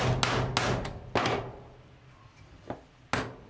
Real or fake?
real